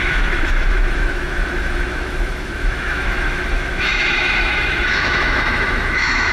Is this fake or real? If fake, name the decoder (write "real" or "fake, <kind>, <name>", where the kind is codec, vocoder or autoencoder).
fake, autoencoder, DAC-VAE